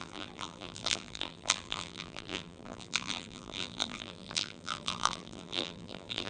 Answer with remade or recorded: remade